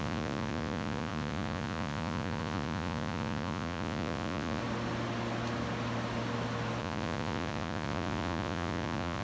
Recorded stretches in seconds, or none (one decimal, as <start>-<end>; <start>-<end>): 4.6-6.8